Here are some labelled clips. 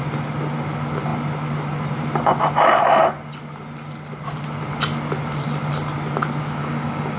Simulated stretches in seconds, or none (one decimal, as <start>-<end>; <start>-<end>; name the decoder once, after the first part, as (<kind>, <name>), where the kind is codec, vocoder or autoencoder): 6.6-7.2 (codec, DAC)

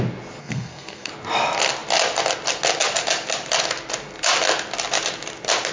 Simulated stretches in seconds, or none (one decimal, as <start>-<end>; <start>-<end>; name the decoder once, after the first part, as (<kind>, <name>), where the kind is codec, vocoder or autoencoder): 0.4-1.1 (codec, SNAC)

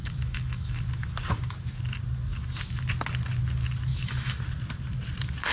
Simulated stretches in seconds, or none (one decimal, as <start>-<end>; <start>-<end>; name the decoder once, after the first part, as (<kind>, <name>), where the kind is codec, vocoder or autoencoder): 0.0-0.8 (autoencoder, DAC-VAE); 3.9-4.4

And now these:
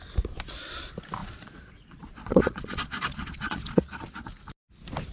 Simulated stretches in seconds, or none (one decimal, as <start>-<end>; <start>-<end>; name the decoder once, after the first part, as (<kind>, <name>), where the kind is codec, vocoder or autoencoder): 1.2-4.3 (vocoder, Vocos)

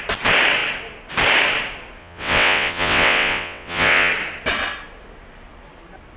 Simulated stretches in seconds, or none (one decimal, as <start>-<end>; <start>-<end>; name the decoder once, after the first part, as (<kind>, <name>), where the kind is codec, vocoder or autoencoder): 2.0-4.1 (vocoder, WaveNeXt)

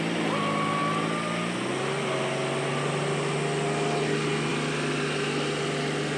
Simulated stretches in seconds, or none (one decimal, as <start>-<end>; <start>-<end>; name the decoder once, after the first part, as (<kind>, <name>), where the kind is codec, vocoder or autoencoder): none

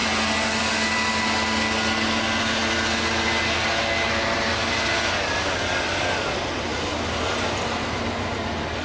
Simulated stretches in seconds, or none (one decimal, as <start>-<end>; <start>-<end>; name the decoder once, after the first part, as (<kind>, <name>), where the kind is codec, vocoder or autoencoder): none

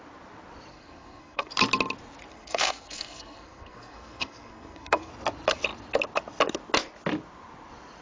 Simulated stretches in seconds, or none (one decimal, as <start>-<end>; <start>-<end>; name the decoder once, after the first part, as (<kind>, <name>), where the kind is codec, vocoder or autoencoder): 0.7-1.5 (codec, SNAC); 2.3-5.1